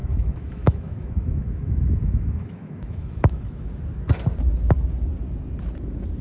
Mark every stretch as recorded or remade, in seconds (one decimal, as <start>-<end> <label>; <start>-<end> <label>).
0.0-3.7 remade; 3.7-6.2 recorded